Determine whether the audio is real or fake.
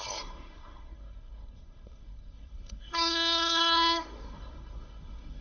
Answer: fake